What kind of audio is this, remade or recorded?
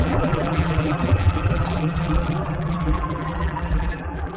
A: remade